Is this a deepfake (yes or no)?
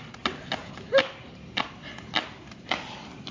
no